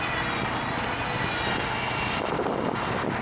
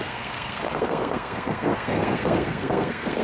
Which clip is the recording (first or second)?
first